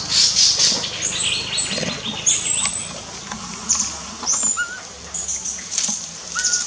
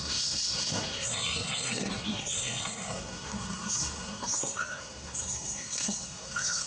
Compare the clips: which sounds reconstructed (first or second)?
second